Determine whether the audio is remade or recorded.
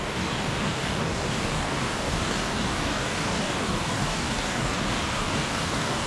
remade